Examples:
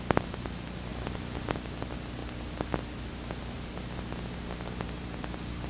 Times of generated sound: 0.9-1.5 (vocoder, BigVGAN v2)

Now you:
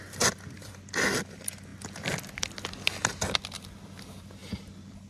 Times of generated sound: none

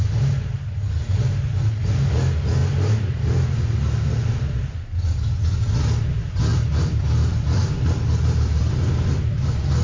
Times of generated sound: 6.5-9.3 (vocoder, BigVGAN v2)

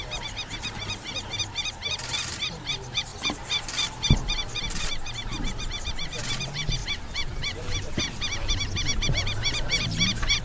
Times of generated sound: 3.1-4.6 (vocoder, BigVGAN v2); 6.8-10.4

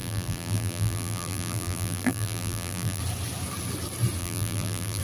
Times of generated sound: 0.0-3.0 (vocoder, BigVGAN v2); 4.2-5.0

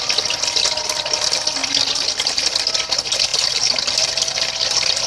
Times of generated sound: 3.3-5.1 (vocoder, BigVGAN v2)